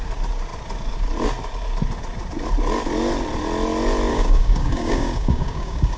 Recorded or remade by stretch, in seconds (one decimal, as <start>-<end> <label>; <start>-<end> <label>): 0.0-4.1 recorded; 4.1-6.0 remade